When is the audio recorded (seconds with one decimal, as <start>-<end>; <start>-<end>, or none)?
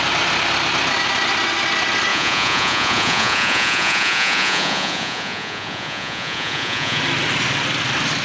0.0-2.1; 7.0-8.2